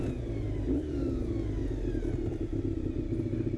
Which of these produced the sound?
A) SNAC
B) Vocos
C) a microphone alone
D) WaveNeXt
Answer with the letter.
C